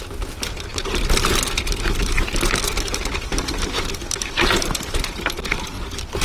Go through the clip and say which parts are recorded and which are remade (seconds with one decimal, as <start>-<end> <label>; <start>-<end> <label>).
0.0-6.2 remade